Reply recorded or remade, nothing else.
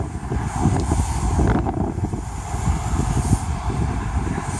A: recorded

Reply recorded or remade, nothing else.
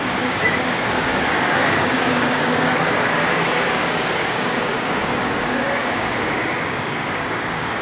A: remade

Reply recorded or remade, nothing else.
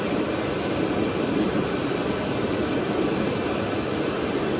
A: remade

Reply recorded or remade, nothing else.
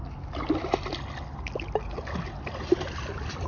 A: recorded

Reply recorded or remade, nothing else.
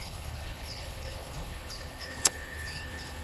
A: remade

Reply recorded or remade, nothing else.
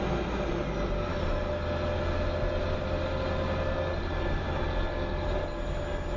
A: recorded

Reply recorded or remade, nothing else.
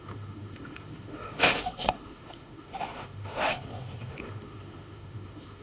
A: remade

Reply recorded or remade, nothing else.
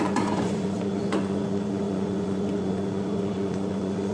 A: remade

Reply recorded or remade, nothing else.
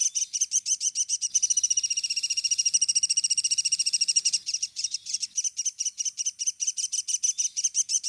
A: remade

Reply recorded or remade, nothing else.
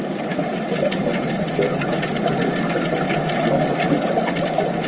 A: recorded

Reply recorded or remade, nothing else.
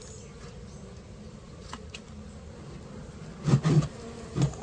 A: recorded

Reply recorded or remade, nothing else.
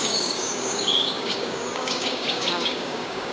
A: remade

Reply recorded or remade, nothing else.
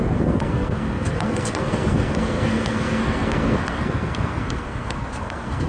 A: remade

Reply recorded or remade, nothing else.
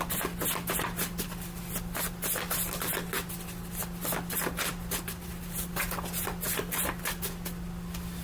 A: recorded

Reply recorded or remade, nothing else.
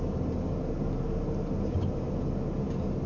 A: recorded